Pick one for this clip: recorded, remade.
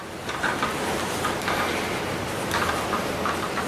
recorded